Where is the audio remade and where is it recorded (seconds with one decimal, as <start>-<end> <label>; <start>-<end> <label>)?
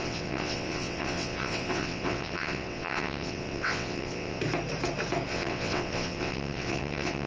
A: 0.0-4.4 remade; 4.4-5.3 recorded; 5.3-7.3 remade